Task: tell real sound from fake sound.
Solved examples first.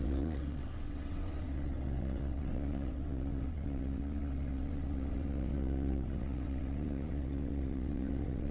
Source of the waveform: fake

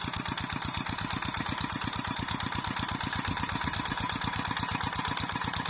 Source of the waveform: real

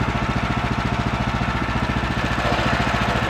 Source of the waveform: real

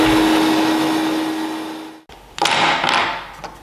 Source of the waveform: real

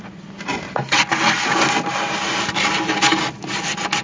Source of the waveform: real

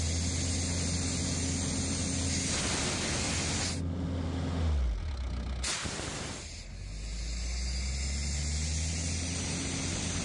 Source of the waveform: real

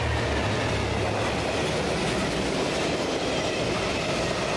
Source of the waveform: real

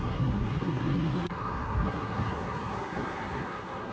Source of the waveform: fake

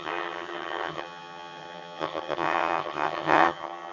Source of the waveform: fake